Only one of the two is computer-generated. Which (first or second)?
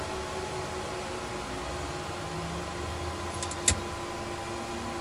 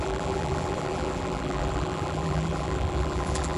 second